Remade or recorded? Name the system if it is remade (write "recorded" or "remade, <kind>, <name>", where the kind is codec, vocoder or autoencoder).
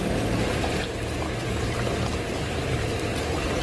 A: recorded